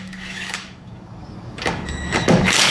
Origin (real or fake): fake